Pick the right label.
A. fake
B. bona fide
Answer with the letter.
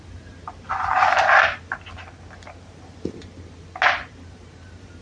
B